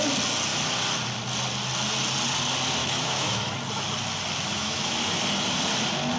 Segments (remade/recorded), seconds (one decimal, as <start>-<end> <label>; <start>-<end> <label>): 0.0-2.8 recorded; 2.8-3.5 remade; 3.5-4.5 recorded; 4.5-5.0 remade; 5.0-6.2 recorded